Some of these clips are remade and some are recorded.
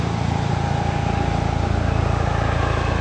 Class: recorded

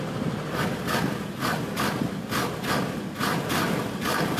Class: recorded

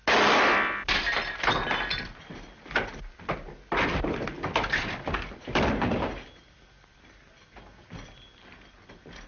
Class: recorded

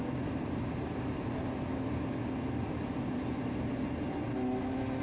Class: recorded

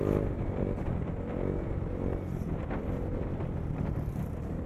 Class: recorded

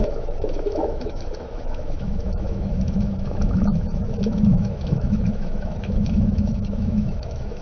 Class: remade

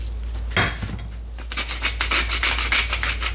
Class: recorded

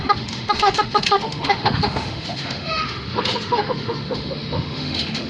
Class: remade